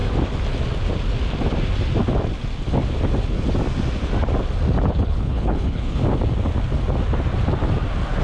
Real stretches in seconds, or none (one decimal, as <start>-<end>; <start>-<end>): 0.0-4.9; 6.0-8.2